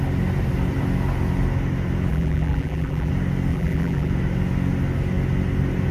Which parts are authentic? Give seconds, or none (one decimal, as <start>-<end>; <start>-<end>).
0.0-2.1; 3.1-3.5; 4.1-5.9